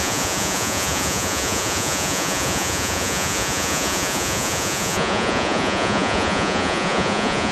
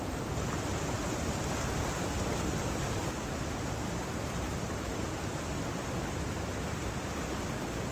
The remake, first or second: first